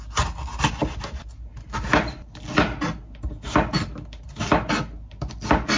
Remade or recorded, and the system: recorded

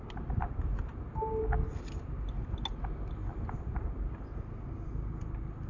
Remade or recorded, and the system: recorded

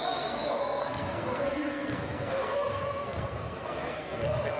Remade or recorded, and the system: remade, codec, SNAC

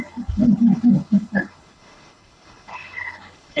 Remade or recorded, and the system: remade, codec, HILCodec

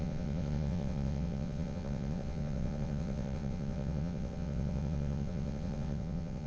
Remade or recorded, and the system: remade, vocoder, WaveNeXt